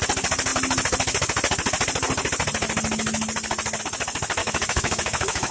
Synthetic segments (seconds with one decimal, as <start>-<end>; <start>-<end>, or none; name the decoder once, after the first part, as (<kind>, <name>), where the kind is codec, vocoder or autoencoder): 4.4-5.5 (autoencoder, DAC-VAE)